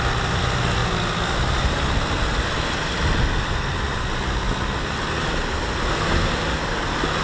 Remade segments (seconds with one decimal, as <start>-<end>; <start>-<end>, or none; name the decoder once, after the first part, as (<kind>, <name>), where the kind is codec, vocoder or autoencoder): none